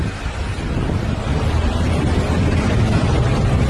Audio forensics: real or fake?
real